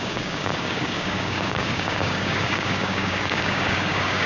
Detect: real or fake fake